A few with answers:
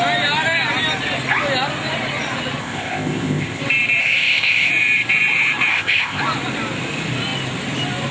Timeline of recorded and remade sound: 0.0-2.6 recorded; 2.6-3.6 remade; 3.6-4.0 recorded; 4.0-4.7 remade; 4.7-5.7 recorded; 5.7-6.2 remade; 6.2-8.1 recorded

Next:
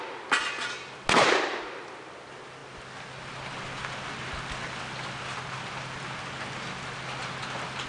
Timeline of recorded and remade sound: 0.0-7.9 recorded

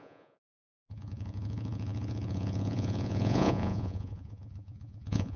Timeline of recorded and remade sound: 0.0-5.4 remade

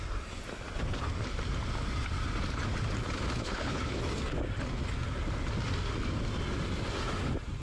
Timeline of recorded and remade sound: 0.0-3.4 recorded; 3.4-4.0 remade; 4.0-7.6 recorded

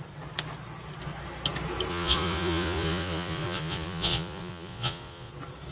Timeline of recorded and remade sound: 0.0-1.9 recorded; 1.9-5.3 remade; 5.3-5.7 recorded

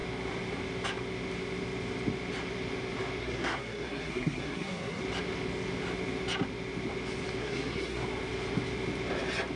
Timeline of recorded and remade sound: 0.0-3.2 recorded; 3.2-5.0 remade; 5.0-7.4 recorded; 7.4-8.0 remade; 8.0-9.6 recorded

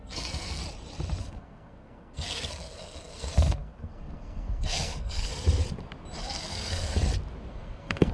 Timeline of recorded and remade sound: 0.0-0.6 remade; 0.6-1.2 recorded; 1.2-5.3 remade; 5.3-6.2 recorded; 6.2-7.0 remade; 7.0-7.5 recorded; 7.5-8.1 remade